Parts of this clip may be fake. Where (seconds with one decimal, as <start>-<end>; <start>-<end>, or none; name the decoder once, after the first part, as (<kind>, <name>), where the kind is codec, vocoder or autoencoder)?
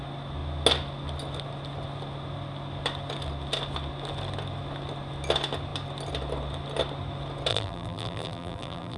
7.5-9.0 (vocoder, BigVGAN v2)